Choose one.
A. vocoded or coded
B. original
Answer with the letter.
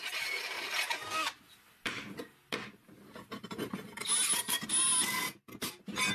B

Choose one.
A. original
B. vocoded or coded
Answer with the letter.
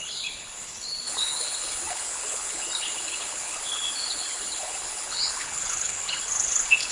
B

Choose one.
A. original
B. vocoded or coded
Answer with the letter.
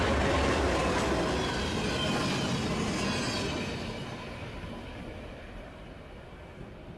A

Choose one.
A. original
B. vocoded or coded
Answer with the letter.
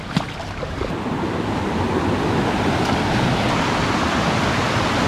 A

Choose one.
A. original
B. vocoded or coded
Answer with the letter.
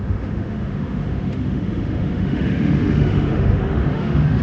B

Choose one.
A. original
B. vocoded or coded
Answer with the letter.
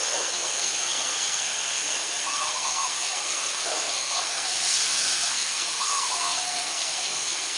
B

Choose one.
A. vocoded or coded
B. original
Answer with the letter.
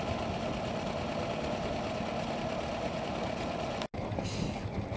B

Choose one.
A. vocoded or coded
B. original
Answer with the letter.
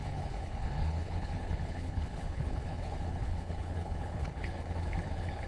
A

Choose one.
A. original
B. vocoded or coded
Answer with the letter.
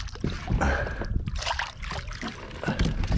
A